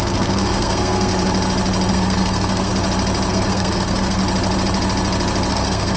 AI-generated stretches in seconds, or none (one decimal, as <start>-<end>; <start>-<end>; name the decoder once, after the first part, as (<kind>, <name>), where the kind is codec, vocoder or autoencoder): 0.0-1.1 (codec, SNAC); 1.9-2.7; 3.3-4.2; 5.5-6.0